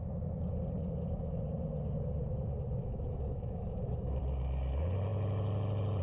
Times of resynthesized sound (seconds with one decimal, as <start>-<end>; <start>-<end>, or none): 2.8-4.2